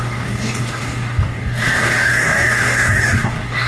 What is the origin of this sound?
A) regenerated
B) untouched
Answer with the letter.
A